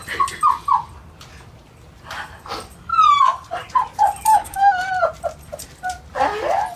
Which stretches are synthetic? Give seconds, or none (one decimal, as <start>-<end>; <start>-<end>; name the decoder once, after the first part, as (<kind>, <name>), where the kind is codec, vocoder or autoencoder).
4.3-4.9 (autoencoder, DAC-VAE)